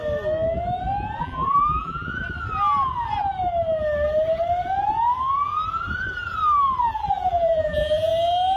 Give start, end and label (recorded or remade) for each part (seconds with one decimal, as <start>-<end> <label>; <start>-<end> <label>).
0.0-1.2 recorded; 1.2-2.1 remade; 2.1-6.8 recorded; 6.8-8.1 remade; 8.1-8.6 recorded